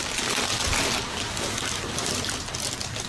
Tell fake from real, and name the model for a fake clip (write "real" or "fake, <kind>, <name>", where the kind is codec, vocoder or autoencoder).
real